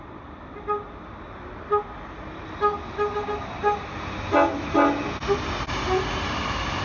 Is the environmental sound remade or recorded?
recorded